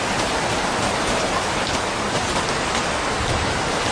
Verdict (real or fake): real